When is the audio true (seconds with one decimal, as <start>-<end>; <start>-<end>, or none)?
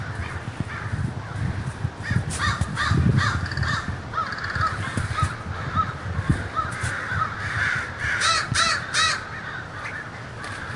0.0-10.8